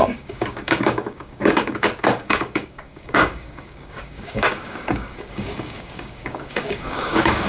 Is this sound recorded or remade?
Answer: remade